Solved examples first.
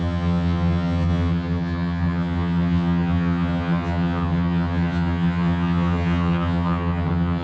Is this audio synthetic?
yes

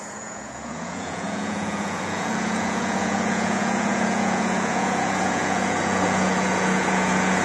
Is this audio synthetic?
yes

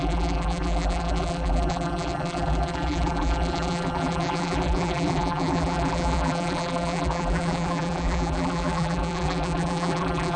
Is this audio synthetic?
yes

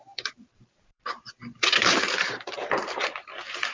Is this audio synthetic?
yes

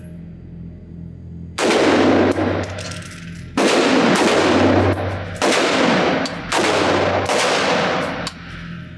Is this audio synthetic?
no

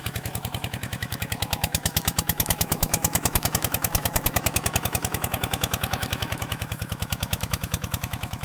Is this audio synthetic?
yes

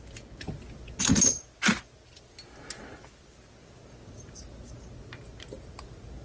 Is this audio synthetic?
no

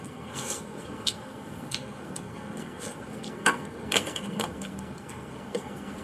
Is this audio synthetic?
yes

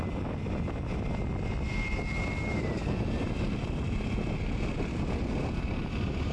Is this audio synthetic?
no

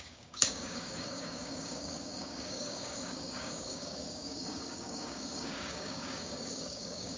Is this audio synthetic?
yes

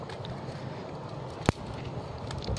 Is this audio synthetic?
no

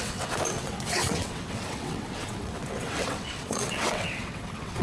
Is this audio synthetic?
yes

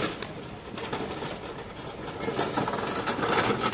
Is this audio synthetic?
no